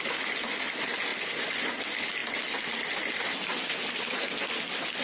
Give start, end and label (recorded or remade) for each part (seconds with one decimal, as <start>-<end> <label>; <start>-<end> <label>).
0.0-5.0 recorded